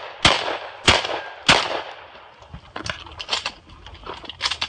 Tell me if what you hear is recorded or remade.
recorded